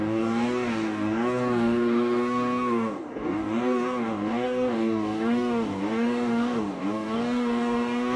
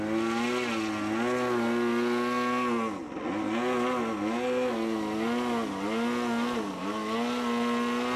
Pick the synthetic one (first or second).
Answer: first